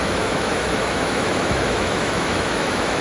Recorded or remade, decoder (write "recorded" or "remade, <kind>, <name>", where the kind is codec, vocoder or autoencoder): remade, autoencoder, DAC-VAE